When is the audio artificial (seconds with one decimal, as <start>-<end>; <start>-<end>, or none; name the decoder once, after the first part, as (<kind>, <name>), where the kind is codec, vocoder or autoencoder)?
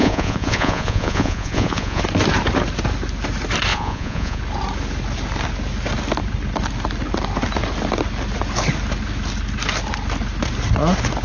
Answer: 0.0-2.0 (vocoder, Vocos); 3.7-4.4